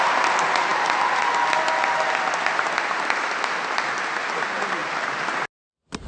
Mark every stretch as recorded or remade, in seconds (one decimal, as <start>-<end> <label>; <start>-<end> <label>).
0.0-6.1 recorded